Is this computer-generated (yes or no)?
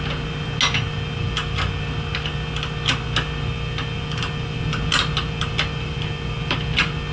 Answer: no